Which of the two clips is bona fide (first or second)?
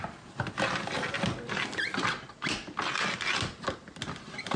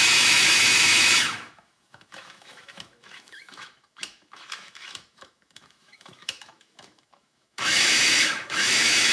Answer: first